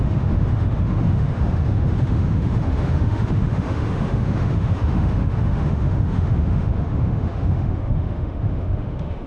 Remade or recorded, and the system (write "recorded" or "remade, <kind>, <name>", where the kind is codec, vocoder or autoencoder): remade, autoencoder, DAC-VAE